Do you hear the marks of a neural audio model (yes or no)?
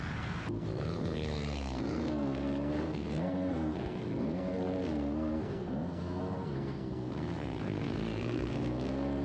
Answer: yes